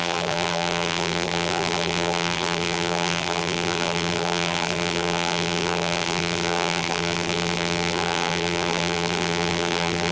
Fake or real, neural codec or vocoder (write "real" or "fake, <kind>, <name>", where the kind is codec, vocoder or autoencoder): fake, vocoder, BigVGAN v2